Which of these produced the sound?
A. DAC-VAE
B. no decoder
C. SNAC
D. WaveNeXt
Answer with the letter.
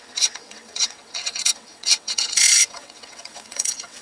D